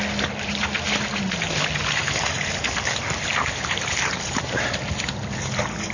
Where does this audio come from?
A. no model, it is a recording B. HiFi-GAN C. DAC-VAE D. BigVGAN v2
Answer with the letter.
A